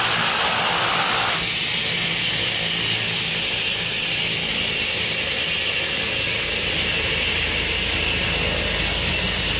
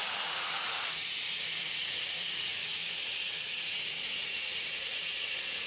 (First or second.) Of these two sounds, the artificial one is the second